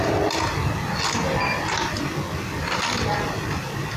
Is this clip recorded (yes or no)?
yes